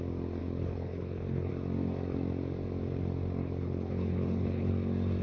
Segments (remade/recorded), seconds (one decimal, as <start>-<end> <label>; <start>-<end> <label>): 0.0-0.4 recorded; 0.4-1.5 remade; 1.5-3.4 recorded; 3.4-4.7 remade; 4.7-5.2 recorded